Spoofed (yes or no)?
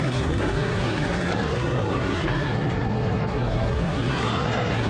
yes